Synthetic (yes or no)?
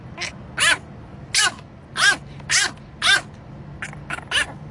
no